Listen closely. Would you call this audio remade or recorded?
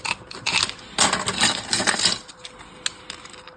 recorded